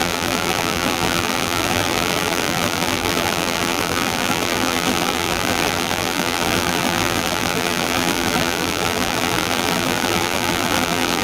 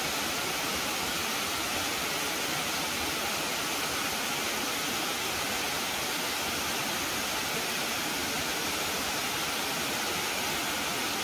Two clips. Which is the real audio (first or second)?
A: second